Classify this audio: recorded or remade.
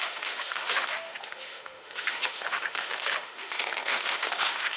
remade